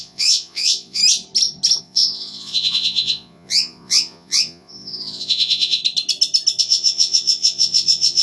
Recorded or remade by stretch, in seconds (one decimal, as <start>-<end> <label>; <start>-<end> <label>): 0.0-1.0 remade; 1.0-1.8 recorded; 1.8-5.8 remade; 5.8-6.6 recorded; 6.6-8.2 remade